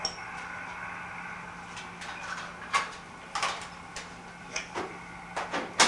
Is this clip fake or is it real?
real